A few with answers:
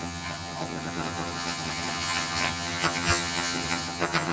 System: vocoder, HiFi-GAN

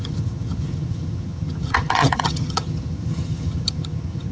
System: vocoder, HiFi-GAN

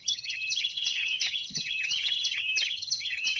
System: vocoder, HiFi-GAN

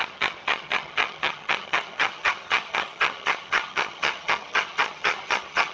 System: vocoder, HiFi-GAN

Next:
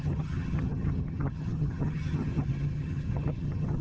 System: vocoder, HiFi-GAN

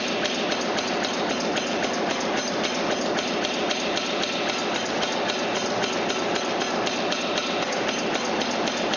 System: none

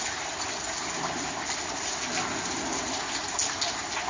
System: none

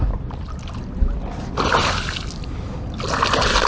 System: none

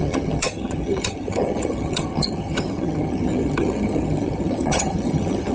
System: vocoder, HiFi-GAN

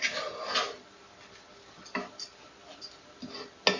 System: none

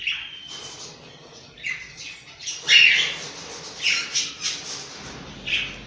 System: none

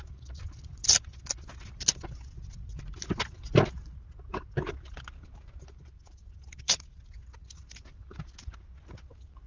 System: none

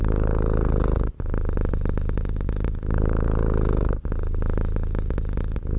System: none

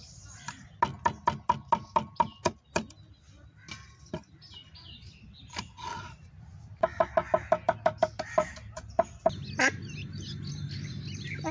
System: none